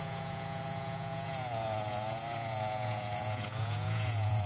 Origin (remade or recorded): remade